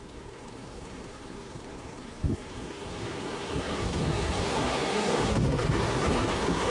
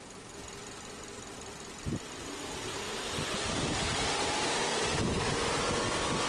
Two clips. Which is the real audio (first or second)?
second